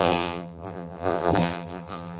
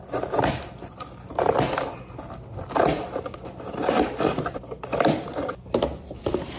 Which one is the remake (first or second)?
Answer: first